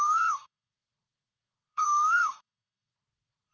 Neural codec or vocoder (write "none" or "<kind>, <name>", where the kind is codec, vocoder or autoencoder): codec, DAC